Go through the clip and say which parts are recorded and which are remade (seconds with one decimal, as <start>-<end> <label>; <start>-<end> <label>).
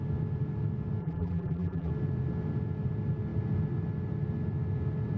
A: 0.0-1.0 recorded; 1.0-1.9 remade; 1.9-5.2 recorded